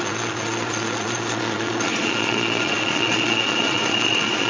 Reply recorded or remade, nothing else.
remade